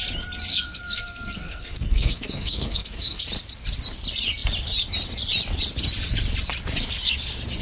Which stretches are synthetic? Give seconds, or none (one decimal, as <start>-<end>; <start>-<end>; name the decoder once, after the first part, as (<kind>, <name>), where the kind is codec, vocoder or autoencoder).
0.5-3.2 (codec, SNAC)